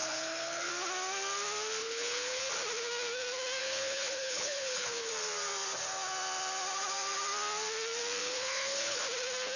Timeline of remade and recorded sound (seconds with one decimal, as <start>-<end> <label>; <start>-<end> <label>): 0.0-0.7 remade; 0.7-1.8 recorded; 1.8-2.4 remade; 2.4-3.6 recorded; 3.6-5.1 remade; 5.1-8.2 recorded; 8.2-9.0 remade; 9.0-9.6 recorded